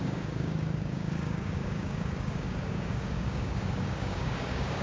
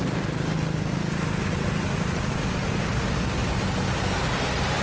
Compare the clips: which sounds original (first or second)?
second